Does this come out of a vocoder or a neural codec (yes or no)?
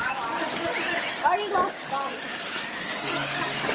no